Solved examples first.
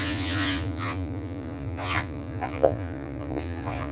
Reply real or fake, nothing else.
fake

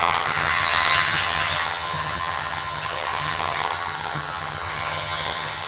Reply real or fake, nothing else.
fake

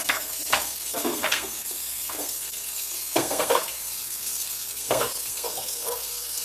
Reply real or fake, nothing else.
fake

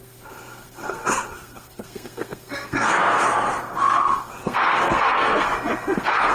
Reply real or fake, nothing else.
fake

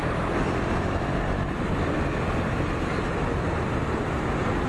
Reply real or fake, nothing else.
real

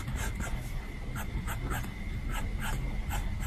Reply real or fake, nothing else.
real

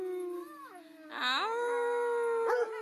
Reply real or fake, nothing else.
real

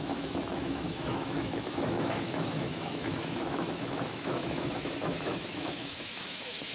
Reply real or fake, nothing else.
fake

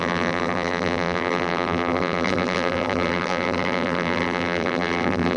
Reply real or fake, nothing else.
fake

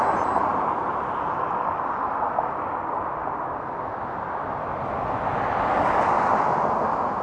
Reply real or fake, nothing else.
real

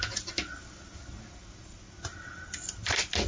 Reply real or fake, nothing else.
real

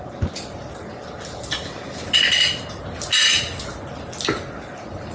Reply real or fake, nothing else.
real